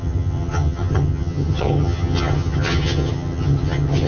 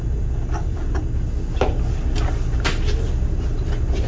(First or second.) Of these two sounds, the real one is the second